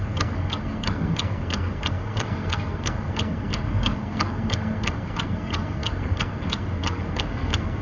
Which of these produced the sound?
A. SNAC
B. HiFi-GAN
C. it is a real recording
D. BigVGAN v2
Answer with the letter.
A